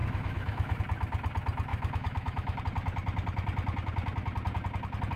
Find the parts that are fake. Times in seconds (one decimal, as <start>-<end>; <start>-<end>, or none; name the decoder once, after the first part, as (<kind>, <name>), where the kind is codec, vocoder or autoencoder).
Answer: 0.0-0.8 (autoencoder, DAC-VAE); 1.7-2.6